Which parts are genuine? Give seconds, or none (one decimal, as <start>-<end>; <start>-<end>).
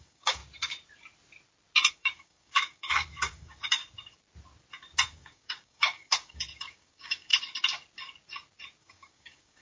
0.4-1.9; 3.8-5.1; 7.3-8.8